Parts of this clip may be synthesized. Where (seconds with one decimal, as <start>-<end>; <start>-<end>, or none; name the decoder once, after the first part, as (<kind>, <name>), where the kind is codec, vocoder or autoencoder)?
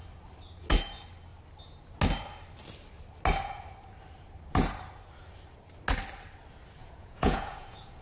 6.8-8.0 (vocoder, Vocos)